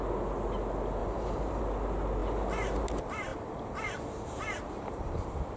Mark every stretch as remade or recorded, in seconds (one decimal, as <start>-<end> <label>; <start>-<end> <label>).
0.0-1.0 recorded; 1.0-1.6 remade; 1.6-3.3 recorded; 3.3-5.6 remade